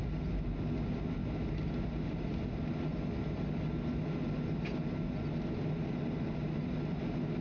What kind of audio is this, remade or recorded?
recorded